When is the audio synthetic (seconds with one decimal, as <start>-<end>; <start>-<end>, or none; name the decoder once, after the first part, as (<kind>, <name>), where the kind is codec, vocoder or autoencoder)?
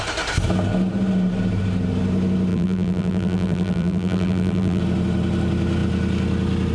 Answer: 2.5-4.8 (vocoder, BigVGAN v2)